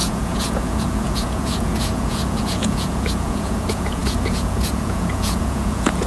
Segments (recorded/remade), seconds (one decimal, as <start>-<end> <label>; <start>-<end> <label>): 0.0-6.1 remade

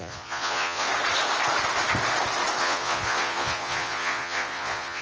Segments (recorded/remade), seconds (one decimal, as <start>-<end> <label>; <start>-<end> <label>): 0.0-0.9 remade; 0.9-2.6 recorded; 2.6-5.0 remade

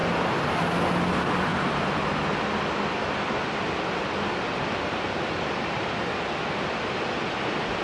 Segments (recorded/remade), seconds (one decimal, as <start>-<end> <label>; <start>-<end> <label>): 0.0-7.8 recorded

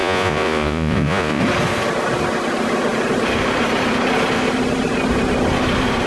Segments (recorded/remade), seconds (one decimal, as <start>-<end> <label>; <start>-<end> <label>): 0.0-1.4 remade; 1.4-6.1 recorded

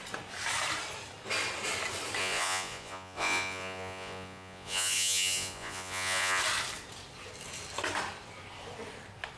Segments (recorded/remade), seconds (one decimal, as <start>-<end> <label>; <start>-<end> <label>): 0.0-2.2 recorded; 2.2-6.4 remade; 6.4-9.4 recorded

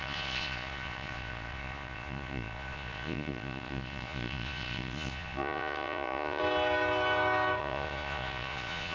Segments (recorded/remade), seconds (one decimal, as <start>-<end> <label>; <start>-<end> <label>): 0.0-6.4 remade; 6.4-7.6 recorded; 7.6-8.9 remade